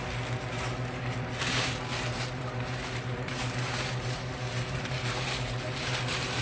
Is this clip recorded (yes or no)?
no